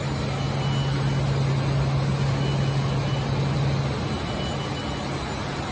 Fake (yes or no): no